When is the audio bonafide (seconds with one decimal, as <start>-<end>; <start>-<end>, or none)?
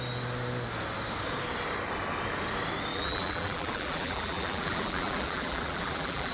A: 0.0-2.9